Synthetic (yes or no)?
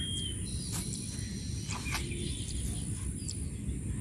no